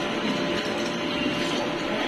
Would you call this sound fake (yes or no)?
no